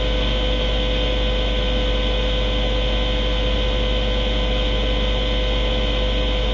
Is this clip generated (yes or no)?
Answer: no